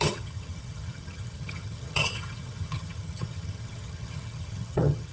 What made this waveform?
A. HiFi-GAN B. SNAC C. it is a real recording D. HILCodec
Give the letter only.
A